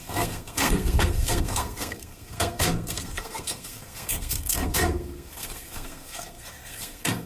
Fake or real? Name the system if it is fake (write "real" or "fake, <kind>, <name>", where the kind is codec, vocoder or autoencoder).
fake, codec, SNAC